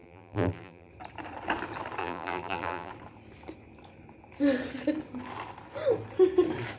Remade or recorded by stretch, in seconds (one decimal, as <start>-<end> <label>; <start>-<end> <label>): 0.0-0.9 remade; 0.9-2.0 recorded; 2.0-2.9 remade; 2.9-6.8 recorded